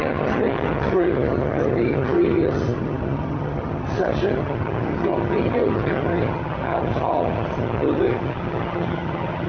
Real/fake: fake